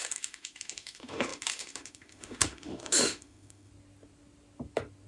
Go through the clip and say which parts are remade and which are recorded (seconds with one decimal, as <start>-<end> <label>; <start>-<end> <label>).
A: 0.0-3.7 remade; 3.7-5.1 recorded